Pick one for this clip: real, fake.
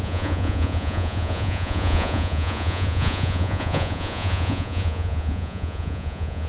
fake